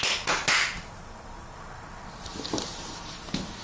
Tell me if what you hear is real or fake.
real